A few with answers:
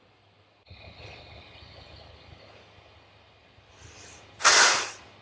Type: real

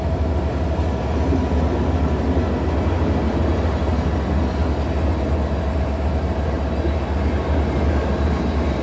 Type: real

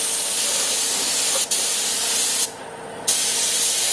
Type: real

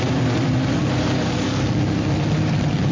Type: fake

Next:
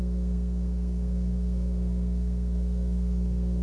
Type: fake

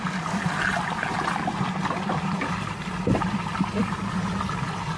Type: real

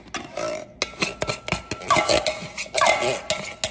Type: real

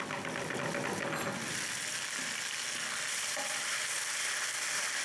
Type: real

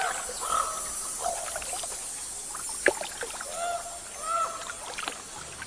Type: real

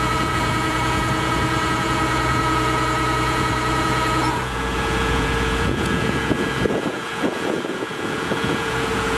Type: fake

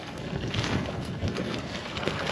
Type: fake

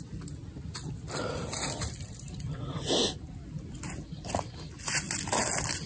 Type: real